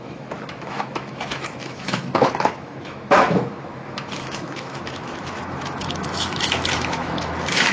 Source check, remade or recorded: remade